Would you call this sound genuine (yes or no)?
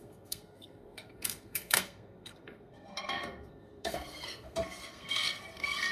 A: no